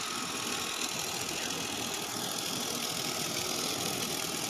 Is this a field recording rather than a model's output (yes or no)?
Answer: yes